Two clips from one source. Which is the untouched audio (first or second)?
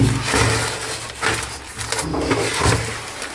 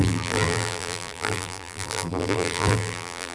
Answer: first